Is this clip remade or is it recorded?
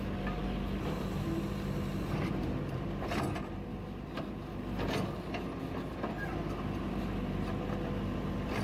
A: recorded